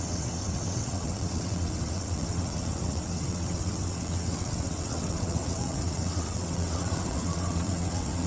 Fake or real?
fake